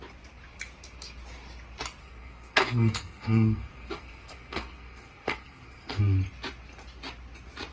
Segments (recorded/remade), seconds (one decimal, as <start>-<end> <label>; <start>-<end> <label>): 0.0-2.0 recorded; 2.0-6.0 remade; 6.0-7.7 recorded

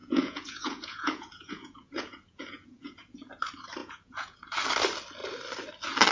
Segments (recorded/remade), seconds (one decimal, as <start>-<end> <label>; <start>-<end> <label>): 0.0-3.4 remade; 3.4-3.8 recorded; 3.8-4.4 remade; 4.4-6.1 recorded

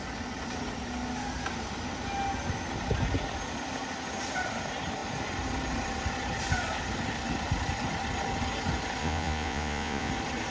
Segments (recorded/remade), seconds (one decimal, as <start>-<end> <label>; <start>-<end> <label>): 0.0-9.0 recorded; 9.0-10.1 remade; 10.1-10.5 recorded

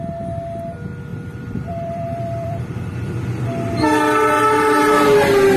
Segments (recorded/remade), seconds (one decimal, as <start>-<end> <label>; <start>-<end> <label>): 0.0-1.1 recorded; 1.1-3.1 remade; 3.1-5.6 recorded

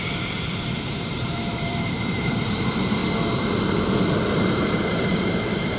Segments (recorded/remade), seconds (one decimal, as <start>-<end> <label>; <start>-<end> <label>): 0.0-3.0 remade; 3.0-4.3 recorded; 4.3-5.8 remade

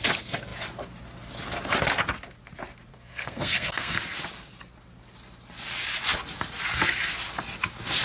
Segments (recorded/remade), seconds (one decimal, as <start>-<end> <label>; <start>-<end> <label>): 0.0-2.9 recorded; 2.9-4.0 remade; 4.0-8.0 recorded

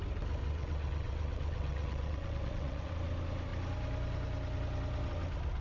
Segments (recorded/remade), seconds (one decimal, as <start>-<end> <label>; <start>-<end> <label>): 0.0-0.4 recorded; 0.4-2.9 remade; 2.9-5.6 recorded